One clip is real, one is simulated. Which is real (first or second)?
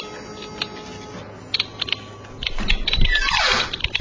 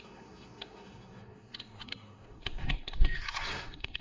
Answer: first